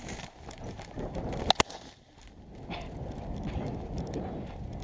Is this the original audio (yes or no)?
yes